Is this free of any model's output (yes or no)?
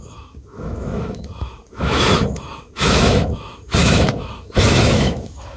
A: no